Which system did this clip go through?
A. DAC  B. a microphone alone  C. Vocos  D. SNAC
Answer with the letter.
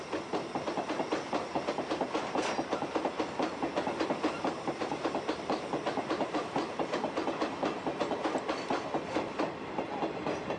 B